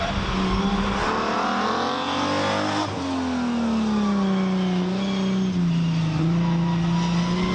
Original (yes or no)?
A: yes